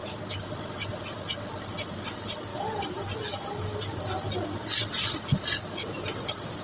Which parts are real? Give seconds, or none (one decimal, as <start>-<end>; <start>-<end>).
0.0-6.6